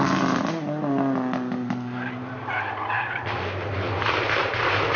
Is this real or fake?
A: real